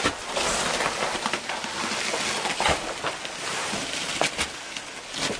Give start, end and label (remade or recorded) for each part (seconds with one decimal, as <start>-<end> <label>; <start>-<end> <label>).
0.0-5.4 recorded